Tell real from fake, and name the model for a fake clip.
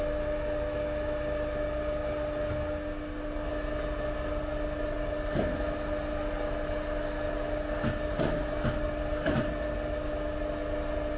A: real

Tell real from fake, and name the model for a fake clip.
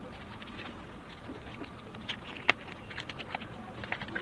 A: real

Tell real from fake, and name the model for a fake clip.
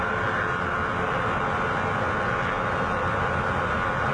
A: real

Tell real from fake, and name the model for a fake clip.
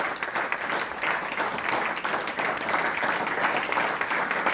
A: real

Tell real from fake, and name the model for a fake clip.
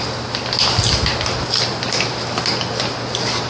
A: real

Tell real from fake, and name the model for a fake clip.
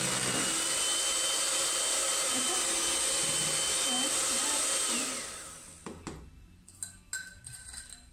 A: real